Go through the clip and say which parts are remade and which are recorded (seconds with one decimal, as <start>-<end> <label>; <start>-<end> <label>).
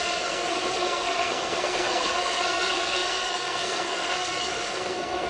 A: 0.0-5.3 remade